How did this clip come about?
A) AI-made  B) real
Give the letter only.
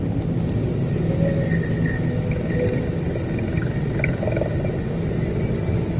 B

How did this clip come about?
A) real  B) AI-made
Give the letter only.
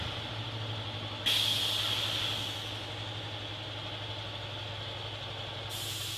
A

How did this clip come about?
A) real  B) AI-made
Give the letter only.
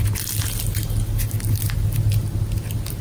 A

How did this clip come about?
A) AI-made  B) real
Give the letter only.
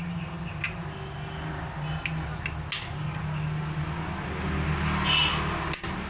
B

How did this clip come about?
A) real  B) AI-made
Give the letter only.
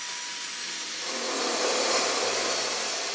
A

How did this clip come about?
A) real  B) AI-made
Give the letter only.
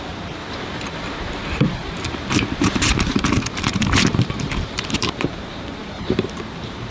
B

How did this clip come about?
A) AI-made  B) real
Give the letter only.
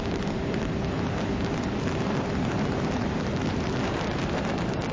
A